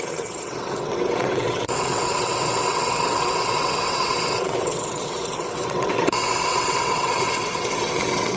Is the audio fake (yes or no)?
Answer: yes